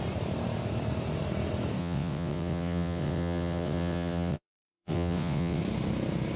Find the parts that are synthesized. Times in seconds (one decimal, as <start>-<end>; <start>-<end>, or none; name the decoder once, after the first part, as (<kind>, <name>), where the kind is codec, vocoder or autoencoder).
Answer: 1.8-5.6 (vocoder, WaveNeXt)